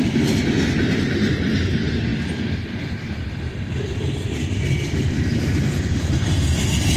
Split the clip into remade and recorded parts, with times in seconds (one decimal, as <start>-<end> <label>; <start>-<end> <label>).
0.0-7.0 recorded

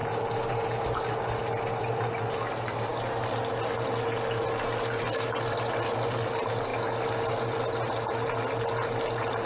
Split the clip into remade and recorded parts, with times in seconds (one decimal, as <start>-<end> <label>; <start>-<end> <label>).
0.0-9.5 recorded